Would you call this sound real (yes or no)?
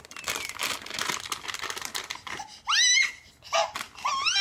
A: yes